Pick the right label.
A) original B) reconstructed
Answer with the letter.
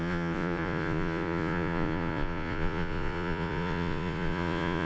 B